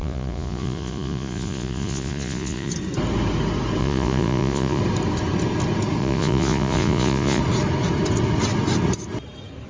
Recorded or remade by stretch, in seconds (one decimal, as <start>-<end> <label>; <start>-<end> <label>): 0.0-2.7 remade; 2.7-3.8 recorded; 3.8-4.8 remade; 4.8-6.0 recorded; 6.0-7.4 remade; 7.4-9.7 recorded